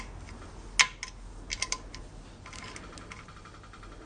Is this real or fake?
real